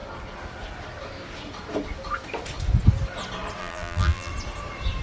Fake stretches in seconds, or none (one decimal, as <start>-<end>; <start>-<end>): 3.6-4.3